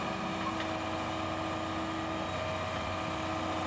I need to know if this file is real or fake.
real